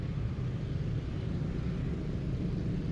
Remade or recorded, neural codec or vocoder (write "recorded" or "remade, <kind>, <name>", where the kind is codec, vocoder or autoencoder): recorded